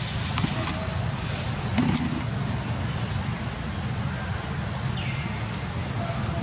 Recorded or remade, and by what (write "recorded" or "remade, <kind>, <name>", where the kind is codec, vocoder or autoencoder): recorded